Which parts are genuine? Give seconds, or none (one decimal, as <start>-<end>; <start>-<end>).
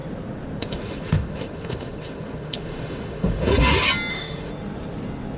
0.0-0.6; 3.5-4.1; 4.5-5.4